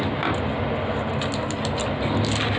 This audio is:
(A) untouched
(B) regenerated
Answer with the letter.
A